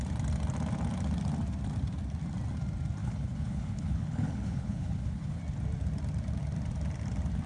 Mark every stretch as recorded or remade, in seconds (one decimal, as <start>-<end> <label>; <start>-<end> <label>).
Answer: 0.0-3.0 recorded; 3.0-5.4 remade; 5.4-7.5 recorded